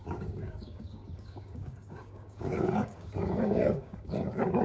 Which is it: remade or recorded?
remade